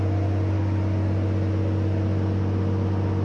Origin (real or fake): real